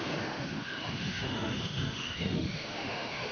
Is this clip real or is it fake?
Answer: fake